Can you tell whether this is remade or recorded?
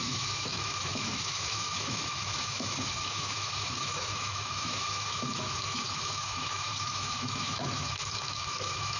remade